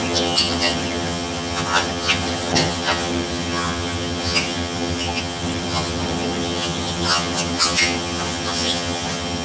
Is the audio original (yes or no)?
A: no